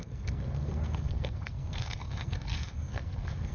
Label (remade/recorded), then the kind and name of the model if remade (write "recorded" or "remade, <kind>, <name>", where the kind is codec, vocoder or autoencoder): remade, codec, SNAC